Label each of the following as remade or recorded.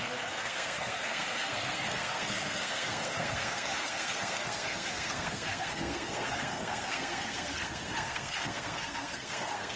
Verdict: remade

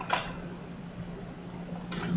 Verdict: recorded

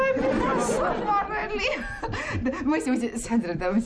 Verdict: recorded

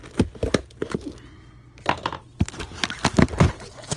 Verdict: recorded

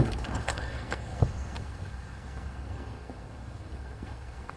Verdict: remade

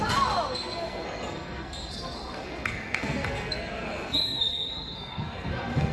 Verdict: remade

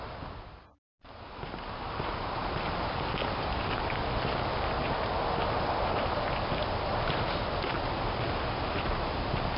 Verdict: recorded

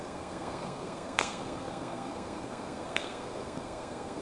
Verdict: remade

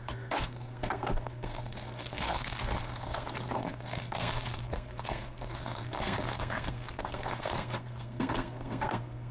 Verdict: remade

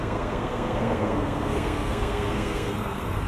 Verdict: remade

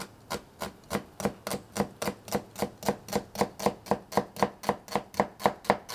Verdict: recorded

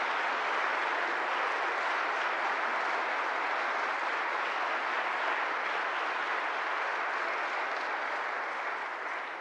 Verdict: recorded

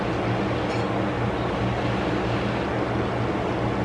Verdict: recorded